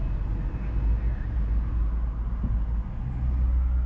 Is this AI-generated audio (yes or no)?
no